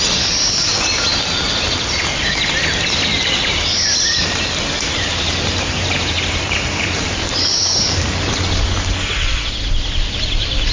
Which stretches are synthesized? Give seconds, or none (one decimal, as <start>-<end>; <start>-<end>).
3.1-3.8; 4.9-7.5